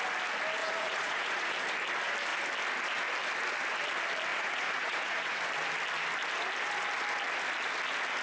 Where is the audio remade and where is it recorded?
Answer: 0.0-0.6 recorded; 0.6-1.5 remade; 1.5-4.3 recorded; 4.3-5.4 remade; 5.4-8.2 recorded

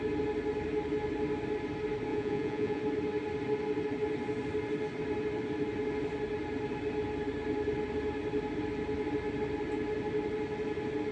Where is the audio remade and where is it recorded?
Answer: 0.0-2.1 recorded; 2.1-2.8 remade; 2.8-11.1 recorded

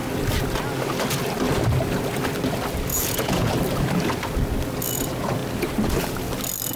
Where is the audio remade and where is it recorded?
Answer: 0.0-2.9 recorded; 2.9-3.5 remade; 3.5-6.8 recorded